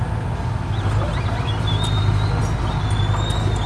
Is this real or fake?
real